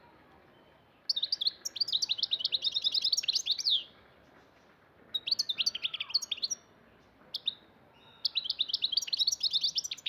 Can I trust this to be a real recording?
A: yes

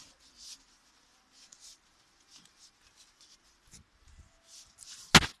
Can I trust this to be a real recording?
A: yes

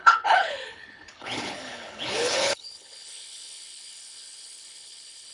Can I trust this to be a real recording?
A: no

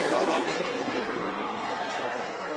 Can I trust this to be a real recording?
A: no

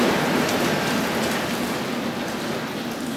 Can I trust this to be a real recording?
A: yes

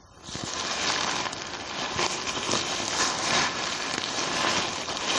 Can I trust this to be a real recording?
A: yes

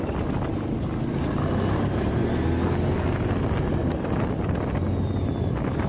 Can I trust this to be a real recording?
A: yes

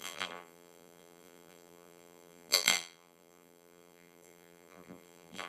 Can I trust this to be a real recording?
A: no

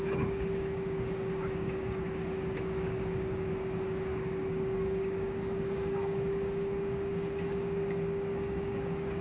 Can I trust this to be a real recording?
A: no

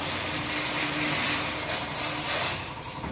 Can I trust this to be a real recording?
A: yes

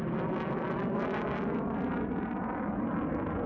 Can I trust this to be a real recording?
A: yes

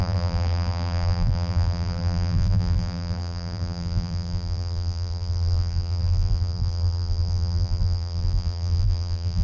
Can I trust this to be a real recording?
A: no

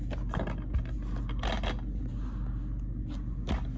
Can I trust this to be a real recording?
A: yes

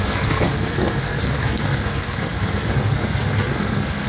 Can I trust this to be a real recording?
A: no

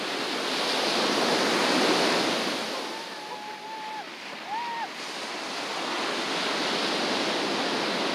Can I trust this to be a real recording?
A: yes